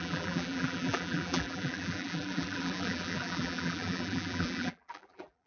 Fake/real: fake